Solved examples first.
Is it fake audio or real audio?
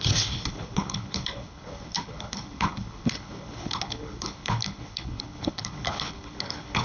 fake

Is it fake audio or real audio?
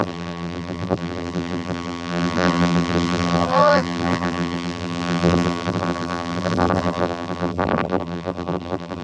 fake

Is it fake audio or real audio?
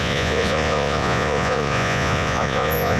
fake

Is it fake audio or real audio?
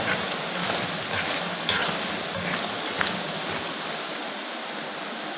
real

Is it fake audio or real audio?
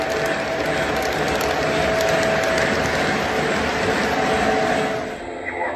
real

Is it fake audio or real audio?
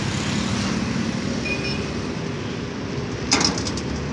real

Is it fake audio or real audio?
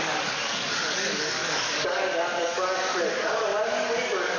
fake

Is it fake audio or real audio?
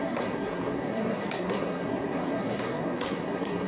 fake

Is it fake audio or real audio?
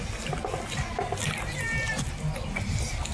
real